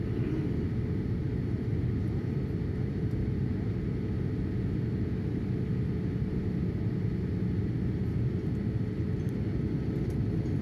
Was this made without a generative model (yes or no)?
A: yes